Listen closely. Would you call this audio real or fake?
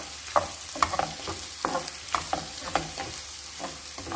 real